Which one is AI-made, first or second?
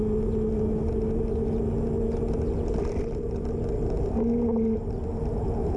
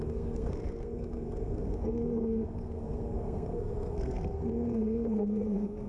second